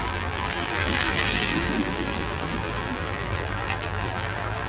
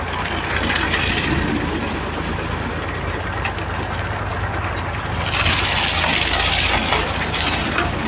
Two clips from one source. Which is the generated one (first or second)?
first